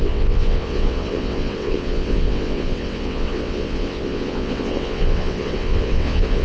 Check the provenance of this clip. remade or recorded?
remade